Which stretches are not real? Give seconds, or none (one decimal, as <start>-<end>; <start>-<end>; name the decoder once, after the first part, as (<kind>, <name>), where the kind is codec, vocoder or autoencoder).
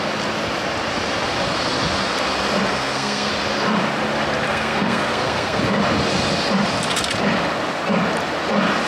2.7-3.3 (codec, SNAC); 4.5-5.6